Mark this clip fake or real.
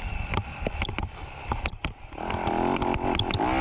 real